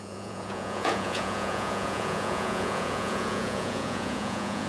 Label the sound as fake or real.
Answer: fake